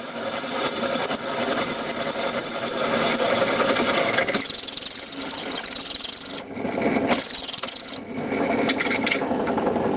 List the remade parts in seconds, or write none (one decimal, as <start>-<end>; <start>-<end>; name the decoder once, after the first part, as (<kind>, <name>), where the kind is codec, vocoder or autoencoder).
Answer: none